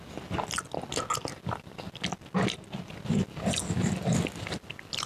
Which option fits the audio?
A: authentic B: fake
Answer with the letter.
A